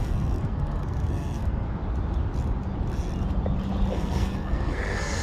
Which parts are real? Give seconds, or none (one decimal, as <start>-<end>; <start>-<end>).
1.8-3.9